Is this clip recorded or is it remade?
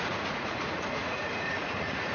remade